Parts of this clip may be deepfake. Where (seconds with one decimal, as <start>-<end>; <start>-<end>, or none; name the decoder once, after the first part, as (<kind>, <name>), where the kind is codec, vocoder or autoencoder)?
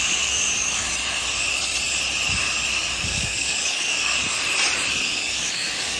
0.0-0.8 (codec, DAC); 2.8-4.2; 4.9-6.0